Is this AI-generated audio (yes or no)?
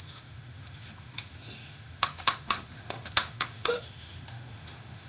yes